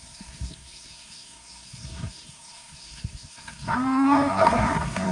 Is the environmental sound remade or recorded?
remade